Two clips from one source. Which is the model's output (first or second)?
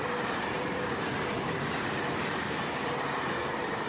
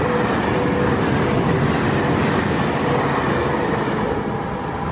first